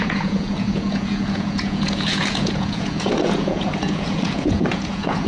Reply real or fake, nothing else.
fake